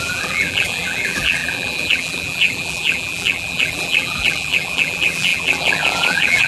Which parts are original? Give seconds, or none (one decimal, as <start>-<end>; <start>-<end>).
none